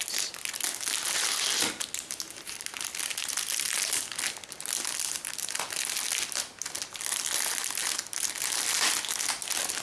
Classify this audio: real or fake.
real